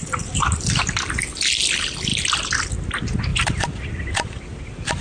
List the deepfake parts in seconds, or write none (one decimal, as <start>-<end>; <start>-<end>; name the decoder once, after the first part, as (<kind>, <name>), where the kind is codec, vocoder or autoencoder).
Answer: 0.0-1.0 (vocoder, BigVGAN v2)